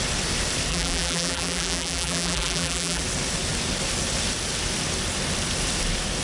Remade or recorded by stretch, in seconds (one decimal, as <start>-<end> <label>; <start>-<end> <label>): 0.0-0.7 recorded; 0.7-3.0 remade; 3.0-6.2 recorded